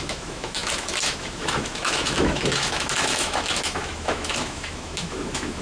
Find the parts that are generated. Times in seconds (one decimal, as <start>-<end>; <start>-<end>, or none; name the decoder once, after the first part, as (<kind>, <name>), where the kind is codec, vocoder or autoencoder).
0.0-5.6 (autoencoder, DAC-VAE)